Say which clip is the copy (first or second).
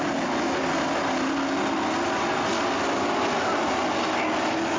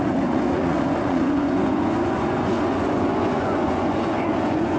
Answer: second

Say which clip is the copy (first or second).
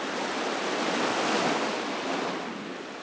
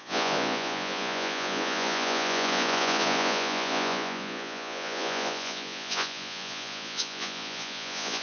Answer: second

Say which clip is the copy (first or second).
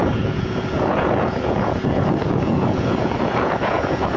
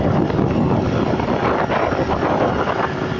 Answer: first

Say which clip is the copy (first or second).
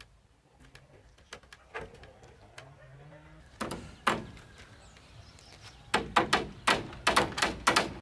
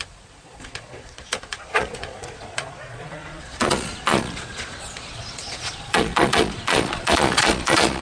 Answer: second